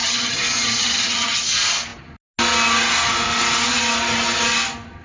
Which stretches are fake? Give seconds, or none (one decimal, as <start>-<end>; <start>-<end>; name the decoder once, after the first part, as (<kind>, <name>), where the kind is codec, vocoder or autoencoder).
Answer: 0.0-1.4 (vocoder, HiFi-GAN)